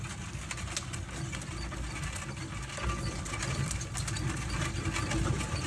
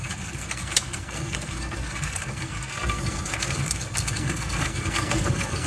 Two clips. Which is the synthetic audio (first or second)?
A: second